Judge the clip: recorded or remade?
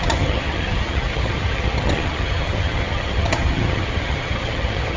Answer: remade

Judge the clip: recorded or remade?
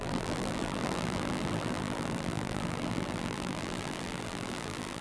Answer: remade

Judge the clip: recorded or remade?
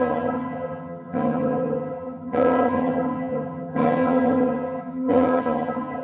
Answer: remade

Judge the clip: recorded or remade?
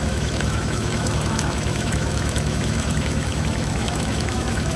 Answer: remade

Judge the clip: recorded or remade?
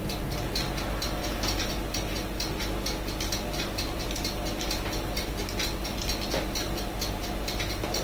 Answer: recorded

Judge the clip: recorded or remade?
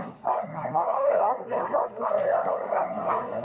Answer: remade